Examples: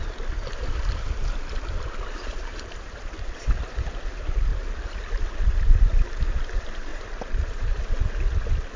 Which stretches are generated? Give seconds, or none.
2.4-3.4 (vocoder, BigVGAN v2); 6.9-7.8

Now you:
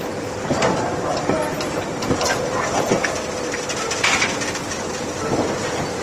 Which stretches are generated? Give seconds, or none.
0.0-4.6 (vocoder, BigVGAN v2)

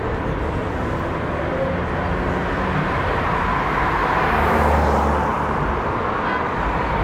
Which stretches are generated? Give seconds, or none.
0.6-1.3 (vocoder, BigVGAN v2); 2.4-4.6; 5.3-5.9

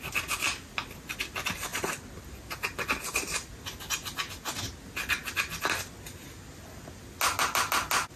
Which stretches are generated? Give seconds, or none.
none

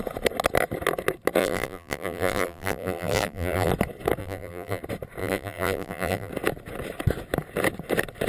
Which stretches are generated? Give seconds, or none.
1.4-3.7 (vocoder, BigVGAN v2); 4.2-4.8; 5.2-6.3

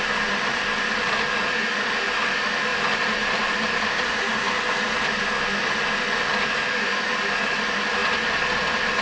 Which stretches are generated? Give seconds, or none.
2.7-4.3 (vocoder, BigVGAN v2)

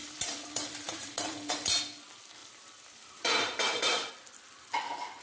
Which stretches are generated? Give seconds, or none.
0.0-1.5 (vocoder, BigVGAN v2); 2.4-4.1

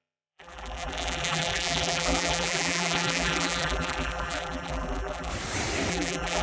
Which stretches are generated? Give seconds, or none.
0.0-5.3 (vocoder, BigVGAN v2); 5.9-6.4